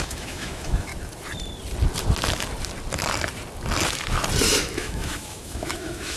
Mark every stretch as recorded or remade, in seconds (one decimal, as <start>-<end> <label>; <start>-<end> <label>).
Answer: 0.0-0.9 remade; 0.9-4.6 recorded; 4.6-6.2 remade